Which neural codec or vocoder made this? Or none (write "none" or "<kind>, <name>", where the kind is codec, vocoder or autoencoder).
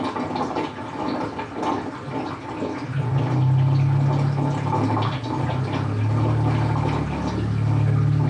none